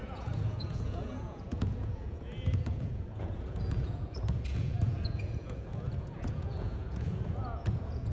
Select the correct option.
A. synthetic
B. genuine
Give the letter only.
A